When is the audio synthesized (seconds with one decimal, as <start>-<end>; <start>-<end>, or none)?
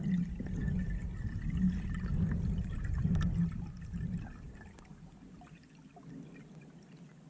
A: none